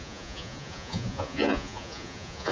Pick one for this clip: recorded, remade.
remade